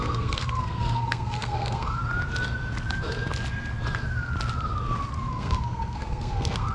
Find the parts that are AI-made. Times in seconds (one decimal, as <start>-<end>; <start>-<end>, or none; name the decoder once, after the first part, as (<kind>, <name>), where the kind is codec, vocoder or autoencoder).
0.0-2.0 (codec, SNAC); 5.3-6.7